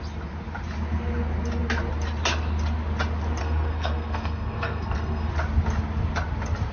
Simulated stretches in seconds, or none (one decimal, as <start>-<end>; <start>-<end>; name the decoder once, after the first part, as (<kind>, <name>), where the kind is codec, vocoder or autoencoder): 3.4-5.3 (codec, SNAC)